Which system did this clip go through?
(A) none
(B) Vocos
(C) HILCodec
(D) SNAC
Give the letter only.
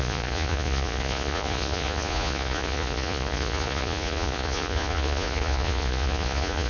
B